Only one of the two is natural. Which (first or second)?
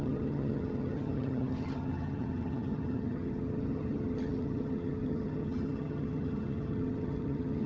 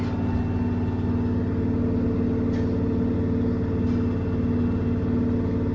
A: second